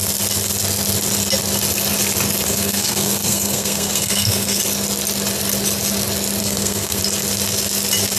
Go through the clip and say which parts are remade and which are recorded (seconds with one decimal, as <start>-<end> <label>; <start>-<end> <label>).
0.0-2.5 recorded; 2.5-4.6 remade; 4.6-6.4 recorded; 6.4-7.0 remade; 7.0-8.2 recorded